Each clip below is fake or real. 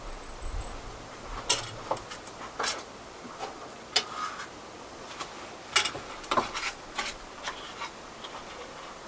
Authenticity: real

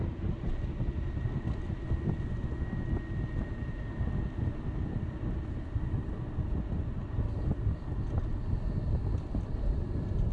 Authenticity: real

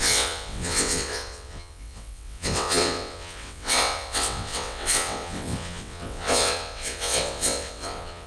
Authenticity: fake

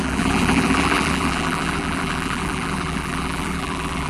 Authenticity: fake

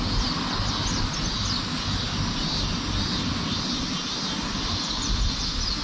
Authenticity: real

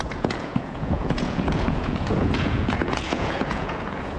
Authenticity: fake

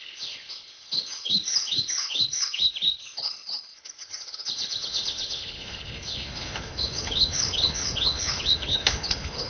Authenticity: fake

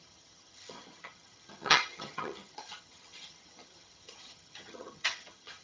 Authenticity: fake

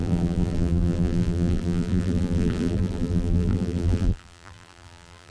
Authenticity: fake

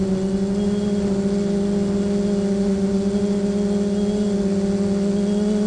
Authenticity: real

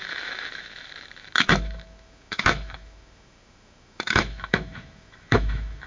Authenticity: fake